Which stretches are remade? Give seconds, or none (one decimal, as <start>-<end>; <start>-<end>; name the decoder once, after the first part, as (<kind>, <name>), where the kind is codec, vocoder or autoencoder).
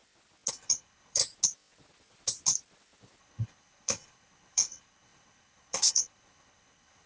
0.5-1.2 (codec, HILCodec); 3.2-7.1